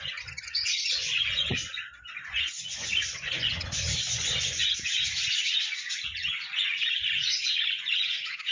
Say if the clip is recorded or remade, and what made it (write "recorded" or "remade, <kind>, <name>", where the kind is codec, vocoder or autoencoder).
remade, vocoder, Vocos